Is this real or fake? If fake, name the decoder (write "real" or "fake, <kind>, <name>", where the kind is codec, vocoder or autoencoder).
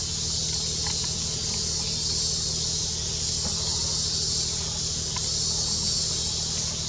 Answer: real